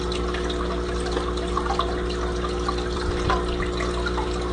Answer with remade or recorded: recorded